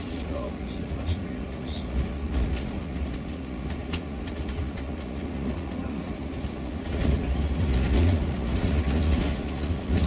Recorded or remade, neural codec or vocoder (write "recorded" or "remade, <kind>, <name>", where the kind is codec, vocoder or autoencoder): remade, vocoder, Vocos